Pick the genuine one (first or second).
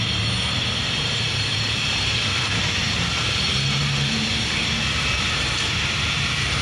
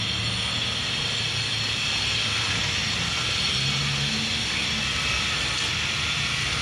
second